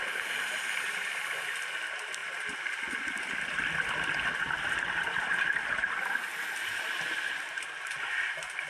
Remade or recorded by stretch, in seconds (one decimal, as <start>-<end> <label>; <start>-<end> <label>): 0.0-8.7 recorded